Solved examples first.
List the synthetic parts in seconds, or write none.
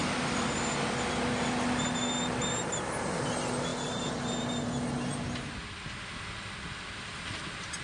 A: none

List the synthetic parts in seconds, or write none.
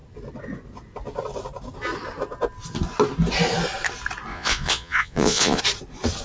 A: 4.3-5.6 (vocoder, Vocos)